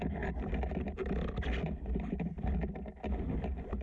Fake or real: real